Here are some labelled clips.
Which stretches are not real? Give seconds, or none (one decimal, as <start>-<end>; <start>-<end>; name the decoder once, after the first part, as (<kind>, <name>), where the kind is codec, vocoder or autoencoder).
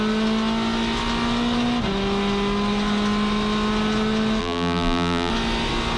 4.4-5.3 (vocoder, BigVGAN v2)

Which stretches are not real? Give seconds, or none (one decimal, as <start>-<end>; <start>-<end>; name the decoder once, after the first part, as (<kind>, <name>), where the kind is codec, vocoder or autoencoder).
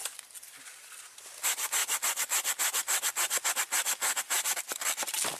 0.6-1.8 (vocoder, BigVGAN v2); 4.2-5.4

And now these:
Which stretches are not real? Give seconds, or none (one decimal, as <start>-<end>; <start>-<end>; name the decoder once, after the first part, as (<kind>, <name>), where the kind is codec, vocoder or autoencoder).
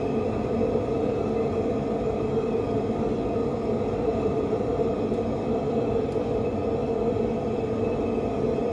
4.1-6.0 (vocoder, BigVGAN v2)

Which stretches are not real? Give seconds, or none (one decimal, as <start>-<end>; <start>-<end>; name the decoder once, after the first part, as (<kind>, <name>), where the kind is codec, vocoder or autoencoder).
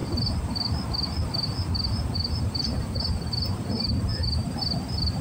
1.9-4.1 (vocoder, BigVGAN v2); 4.8-5.2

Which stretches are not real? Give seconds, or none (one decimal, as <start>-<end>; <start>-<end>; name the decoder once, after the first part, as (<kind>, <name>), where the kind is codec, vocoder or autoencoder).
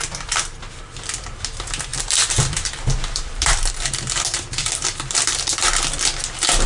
1.9-3.7 (vocoder, BigVGAN v2); 4.6-5.6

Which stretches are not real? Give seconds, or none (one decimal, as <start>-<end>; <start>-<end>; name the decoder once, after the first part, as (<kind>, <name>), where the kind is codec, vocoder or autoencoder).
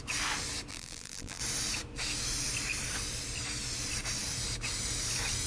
0.7-1.4 (vocoder, BigVGAN v2)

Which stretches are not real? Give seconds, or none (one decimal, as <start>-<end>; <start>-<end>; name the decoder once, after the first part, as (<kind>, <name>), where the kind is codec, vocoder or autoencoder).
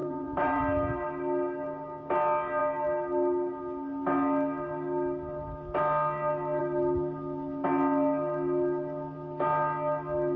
0.0-0.6 (vocoder, BigVGAN v2)